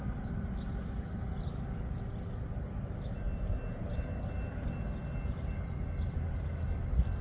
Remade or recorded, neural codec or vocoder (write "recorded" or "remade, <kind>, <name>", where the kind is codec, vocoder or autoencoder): recorded